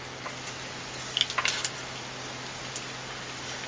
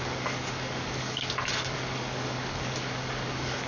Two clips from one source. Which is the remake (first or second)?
second